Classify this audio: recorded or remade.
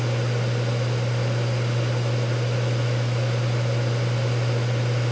recorded